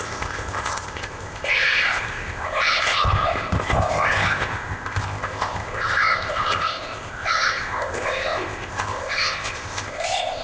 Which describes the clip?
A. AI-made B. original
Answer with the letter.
A